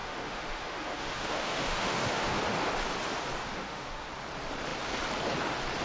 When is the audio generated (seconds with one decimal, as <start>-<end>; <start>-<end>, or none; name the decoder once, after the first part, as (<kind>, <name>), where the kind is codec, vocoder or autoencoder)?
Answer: 0.0-2.4 (autoencoder, DAC-VAE); 3.4-4.1